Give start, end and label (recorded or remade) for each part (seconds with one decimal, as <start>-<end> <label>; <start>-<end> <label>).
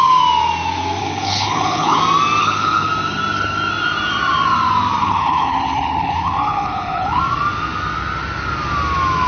0.0-1.0 recorded; 1.0-2.0 remade; 2.0-2.4 recorded; 2.4-2.9 remade; 2.9-5.0 recorded; 5.0-7.2 remade; 7.2-9.3 recorded